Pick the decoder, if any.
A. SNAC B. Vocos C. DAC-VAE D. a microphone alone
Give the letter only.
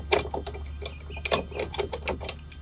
D